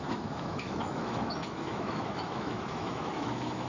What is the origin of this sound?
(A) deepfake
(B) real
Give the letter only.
A